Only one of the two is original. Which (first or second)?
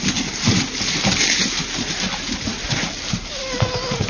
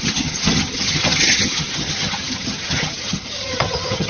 first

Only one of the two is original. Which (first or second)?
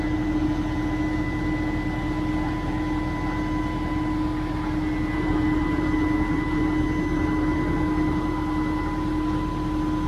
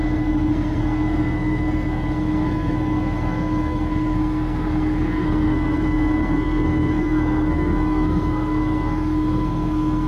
first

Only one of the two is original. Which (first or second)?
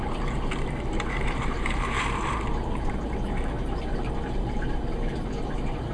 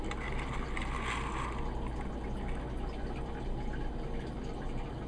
second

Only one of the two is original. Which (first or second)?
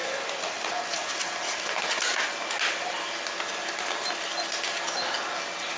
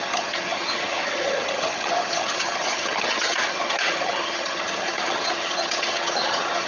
first